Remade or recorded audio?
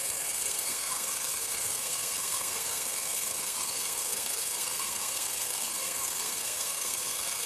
remade